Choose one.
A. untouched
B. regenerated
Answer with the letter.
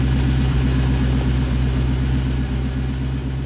A